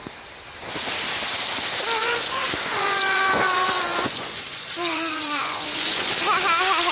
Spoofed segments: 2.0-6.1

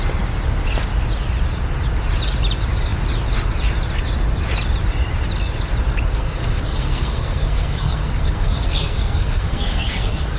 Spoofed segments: 6.1-10.4

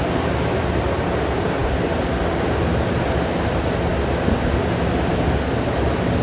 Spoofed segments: none

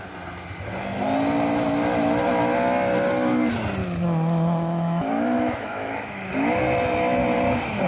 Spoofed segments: 3.8-6.3

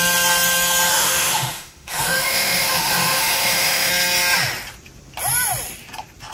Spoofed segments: 0.9-3.9

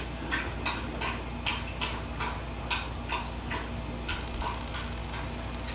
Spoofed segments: none

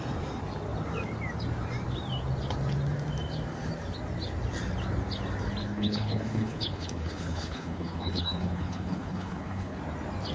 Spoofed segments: 5.6-9.8

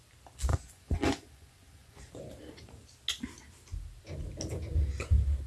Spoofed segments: 0.5-2.1